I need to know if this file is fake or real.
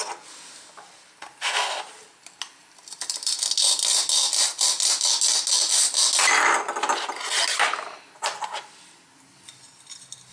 real